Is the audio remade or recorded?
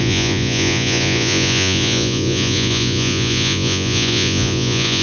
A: remade